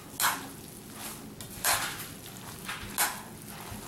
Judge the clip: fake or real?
real